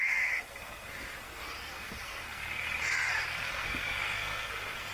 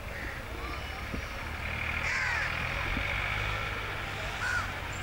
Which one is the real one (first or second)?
second